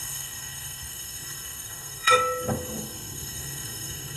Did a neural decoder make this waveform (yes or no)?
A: yes